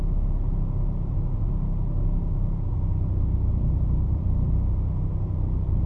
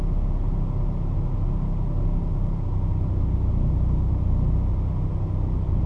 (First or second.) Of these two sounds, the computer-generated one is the first